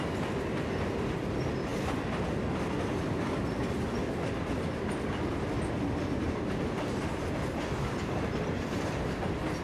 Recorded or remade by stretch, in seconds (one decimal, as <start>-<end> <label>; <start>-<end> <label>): 0.0-9.6 recorded